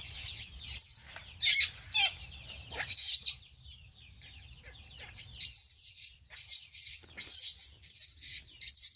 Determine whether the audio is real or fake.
real